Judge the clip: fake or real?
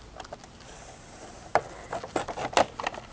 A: real